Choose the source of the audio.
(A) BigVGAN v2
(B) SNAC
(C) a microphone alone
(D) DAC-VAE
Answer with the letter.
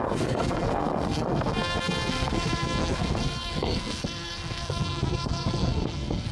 B